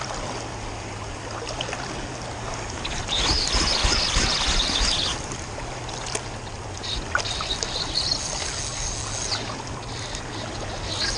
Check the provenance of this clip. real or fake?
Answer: real